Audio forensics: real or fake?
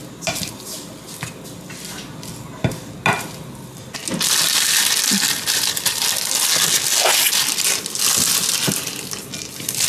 real